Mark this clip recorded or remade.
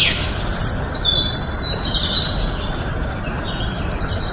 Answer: recorded